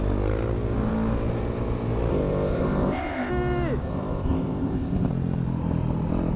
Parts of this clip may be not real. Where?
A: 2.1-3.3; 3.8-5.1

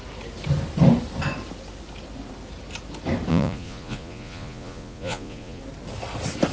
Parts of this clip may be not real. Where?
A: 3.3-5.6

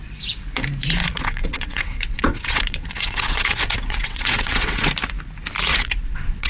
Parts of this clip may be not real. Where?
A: 1.0-4.9; 5.7-6.5

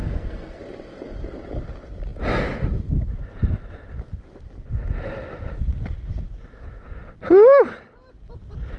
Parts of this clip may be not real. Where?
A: 0.0-0.6